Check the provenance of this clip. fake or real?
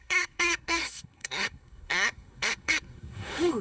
fake